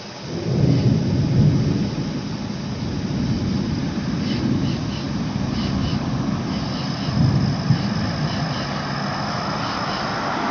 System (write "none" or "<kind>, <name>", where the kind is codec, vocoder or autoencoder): none